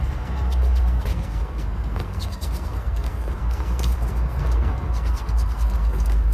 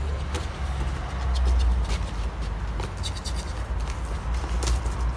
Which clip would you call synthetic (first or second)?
first